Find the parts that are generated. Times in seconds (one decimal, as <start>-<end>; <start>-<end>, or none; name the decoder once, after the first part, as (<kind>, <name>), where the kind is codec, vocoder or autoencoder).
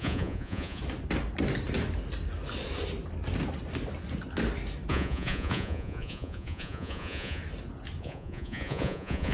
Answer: 0.0-0.8 (vocoder, Vocos); 4.9-7.4; 8.0-9.3